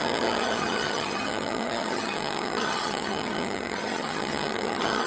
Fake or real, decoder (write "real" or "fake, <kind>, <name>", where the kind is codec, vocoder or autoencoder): fake, vocoder, HiFi-GAN